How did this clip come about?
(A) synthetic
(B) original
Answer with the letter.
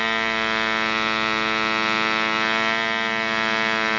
B